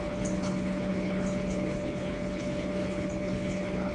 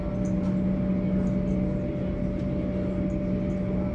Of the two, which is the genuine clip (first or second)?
second